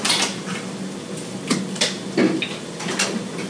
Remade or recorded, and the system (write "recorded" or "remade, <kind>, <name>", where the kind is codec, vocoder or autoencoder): recorded